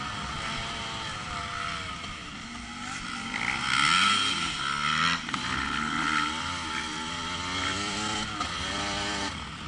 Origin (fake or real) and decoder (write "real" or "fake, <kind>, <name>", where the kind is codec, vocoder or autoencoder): real